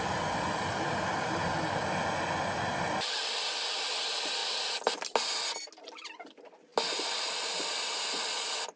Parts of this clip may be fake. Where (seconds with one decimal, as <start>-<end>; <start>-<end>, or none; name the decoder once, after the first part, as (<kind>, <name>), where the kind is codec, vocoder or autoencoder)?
none